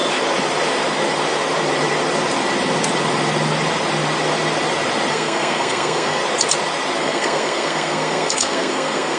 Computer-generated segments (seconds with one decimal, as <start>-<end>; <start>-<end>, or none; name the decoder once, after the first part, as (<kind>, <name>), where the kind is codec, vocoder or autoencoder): 5.1-6.2 (codec, SNAC); 7.0-9.2